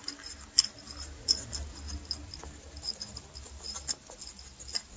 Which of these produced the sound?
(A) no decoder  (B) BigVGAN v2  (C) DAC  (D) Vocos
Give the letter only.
A